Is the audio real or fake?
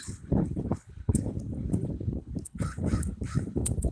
fake